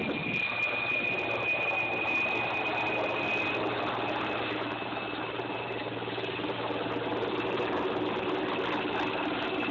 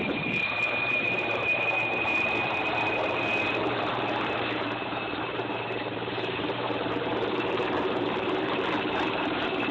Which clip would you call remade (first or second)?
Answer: second